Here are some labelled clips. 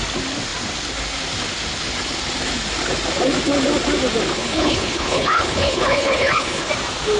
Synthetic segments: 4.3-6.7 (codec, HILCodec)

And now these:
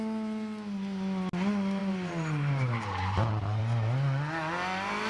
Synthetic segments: 1.8-3.6 (vocoder, BigVGAN v2)